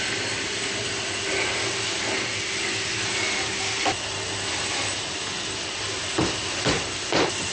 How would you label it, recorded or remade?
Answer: recorded